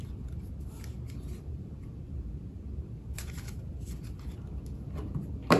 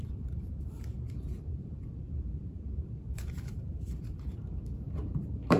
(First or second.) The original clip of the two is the first